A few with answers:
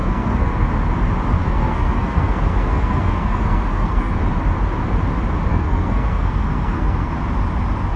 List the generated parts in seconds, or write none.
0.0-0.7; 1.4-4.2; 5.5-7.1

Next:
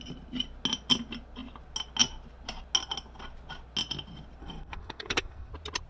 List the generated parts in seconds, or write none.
4.4-5.5